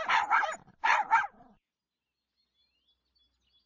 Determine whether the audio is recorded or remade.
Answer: recorded